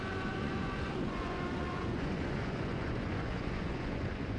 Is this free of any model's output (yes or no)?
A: no